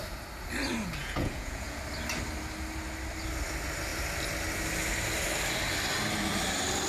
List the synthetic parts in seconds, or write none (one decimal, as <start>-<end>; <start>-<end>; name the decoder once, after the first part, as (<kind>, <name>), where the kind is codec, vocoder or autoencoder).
1.0-1.8 (vocoder, Vocos)